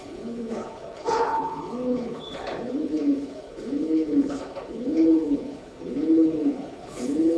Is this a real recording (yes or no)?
no